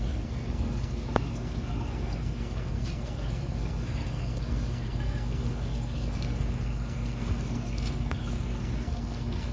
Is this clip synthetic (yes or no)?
yes